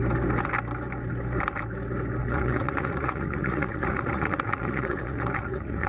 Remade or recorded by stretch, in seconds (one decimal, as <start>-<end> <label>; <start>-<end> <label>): 0.0-2.2 recorded; 2.2-5.9 remade